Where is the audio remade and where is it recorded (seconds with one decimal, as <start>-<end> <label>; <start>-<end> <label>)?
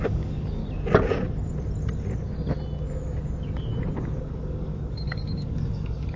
0.0-0.6 remade; 0.6-4.2 recorded; 4.2-6.2 remade